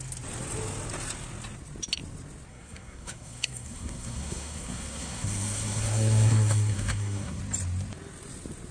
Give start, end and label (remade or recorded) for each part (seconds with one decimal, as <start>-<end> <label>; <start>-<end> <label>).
0.0-2.5 recorded; 2.5-7.4 remade; 7.4-8.7 recorded